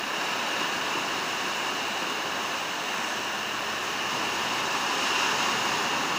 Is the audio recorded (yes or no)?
yes